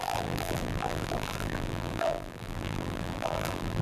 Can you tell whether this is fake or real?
fake